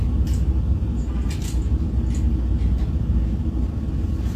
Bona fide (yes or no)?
yes